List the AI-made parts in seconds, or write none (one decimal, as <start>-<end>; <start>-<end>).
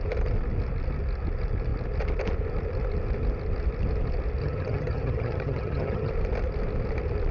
4.4-6.1